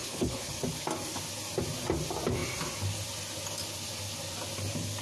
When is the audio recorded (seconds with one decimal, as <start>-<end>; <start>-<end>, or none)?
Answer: 0.5-5.0

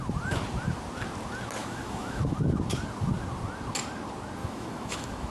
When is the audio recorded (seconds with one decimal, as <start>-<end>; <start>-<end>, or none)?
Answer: 0.0-1.6; 2.2-4.4

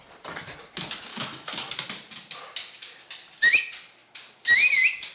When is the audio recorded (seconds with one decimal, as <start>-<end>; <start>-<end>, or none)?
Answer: 0.0-1.1; 1.7-5.1